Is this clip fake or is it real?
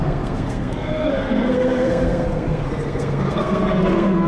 fake